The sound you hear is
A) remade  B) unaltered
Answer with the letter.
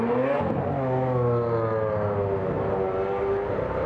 B